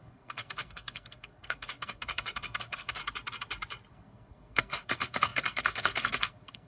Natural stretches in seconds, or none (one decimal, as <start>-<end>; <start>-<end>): 3.0-3.9

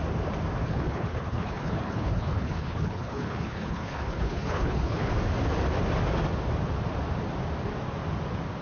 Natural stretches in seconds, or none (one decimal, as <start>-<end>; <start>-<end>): 0.0-0.6; 5.1-8.6

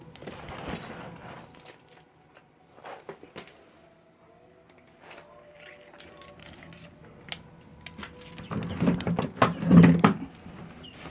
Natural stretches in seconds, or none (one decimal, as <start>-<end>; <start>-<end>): 0.0-11.1

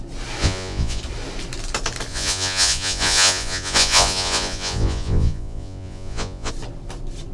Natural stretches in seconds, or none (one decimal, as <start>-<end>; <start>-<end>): 0.0-0.4; 1.0-2.1; 6.5-7.3

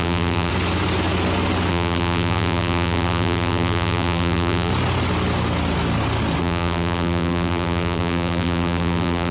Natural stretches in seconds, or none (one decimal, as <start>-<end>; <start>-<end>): 0.5-1.7; 4.7-6.4

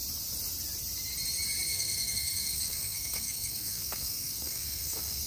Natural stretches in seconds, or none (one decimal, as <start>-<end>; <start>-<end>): 0.0-1.7

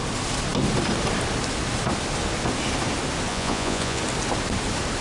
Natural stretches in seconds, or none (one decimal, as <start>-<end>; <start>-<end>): 0.0-3.3; 4.0-5.0

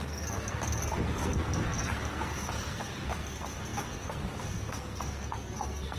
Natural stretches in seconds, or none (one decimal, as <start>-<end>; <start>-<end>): none